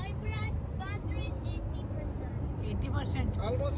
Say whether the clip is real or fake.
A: real